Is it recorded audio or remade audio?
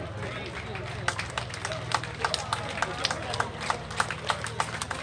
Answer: recorded